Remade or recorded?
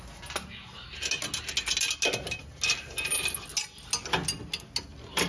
recorded